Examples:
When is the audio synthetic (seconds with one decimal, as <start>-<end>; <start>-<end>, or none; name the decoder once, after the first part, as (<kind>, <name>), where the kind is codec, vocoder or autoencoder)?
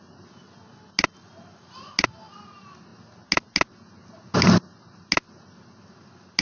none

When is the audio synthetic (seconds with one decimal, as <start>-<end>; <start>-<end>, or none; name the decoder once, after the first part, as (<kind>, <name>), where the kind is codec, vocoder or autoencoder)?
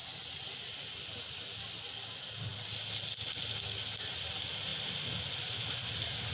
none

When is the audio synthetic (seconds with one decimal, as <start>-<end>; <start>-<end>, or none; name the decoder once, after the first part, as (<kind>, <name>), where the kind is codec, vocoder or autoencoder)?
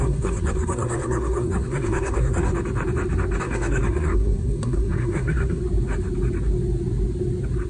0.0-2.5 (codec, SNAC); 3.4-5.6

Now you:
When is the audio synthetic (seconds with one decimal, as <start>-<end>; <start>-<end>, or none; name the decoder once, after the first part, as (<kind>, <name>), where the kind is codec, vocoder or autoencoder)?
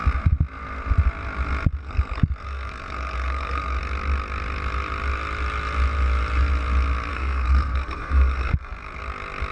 1.8-3.8 (codec, SNAC); 7.1-9.0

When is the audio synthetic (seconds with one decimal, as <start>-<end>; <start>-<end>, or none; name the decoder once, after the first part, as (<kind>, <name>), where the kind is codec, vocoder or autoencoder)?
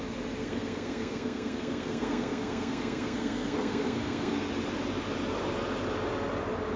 0.4-4.5 (codec, SNAC)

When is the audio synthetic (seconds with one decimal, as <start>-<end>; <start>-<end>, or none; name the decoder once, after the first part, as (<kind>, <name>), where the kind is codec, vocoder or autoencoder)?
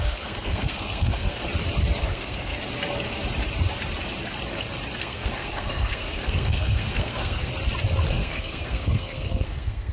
0.0-1.4 (codec, SNAC); 2.0-2.6; 5.0-7.5; 8.1-9.9